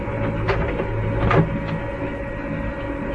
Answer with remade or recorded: recorded